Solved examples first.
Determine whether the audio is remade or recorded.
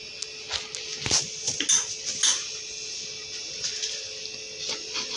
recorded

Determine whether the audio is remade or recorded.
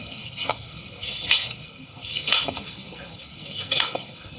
remade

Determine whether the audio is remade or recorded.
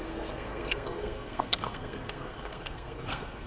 remade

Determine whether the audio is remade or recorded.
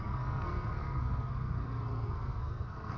remade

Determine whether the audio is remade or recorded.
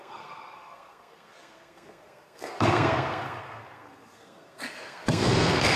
remade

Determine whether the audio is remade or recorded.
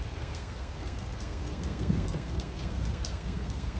remade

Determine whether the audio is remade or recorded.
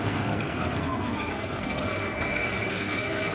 remade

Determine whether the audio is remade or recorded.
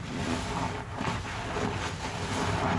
recorded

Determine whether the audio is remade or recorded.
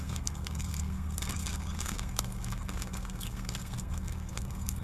remade